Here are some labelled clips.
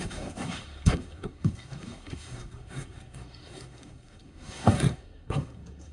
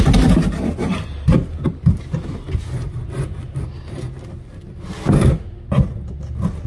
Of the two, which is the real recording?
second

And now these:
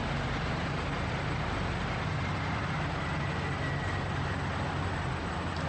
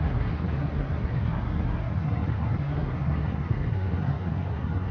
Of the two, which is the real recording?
first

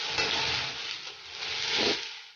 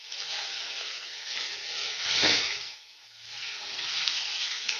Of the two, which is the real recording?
first